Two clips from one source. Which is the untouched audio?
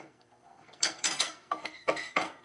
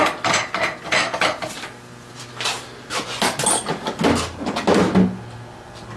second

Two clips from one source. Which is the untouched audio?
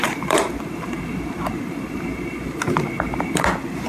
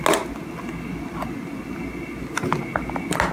second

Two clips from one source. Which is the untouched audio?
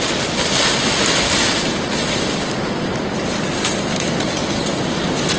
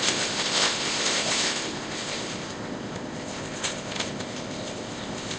first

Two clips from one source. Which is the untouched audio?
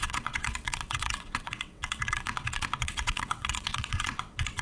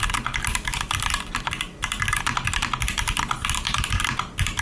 second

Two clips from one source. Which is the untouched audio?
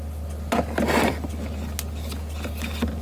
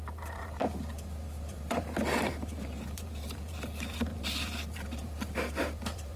first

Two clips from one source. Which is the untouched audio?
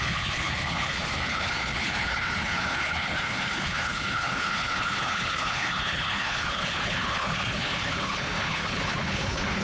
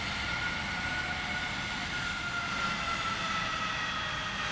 second